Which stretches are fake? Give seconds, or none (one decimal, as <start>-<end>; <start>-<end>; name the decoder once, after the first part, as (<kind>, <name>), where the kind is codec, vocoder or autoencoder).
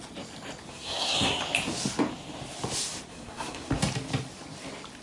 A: 0.7-1.4 (codec, SNAC); 3.1-3.7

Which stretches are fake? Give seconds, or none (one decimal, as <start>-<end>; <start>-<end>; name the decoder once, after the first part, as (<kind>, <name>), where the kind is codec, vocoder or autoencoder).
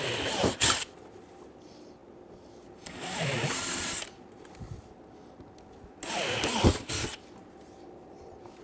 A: none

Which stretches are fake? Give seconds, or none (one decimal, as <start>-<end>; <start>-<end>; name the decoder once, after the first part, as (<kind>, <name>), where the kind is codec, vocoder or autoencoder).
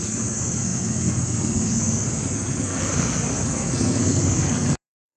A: 0.0-5.2 (codec, SNAC)